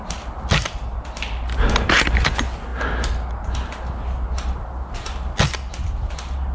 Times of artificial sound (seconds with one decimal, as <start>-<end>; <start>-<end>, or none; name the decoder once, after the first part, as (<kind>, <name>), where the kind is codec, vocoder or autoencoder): none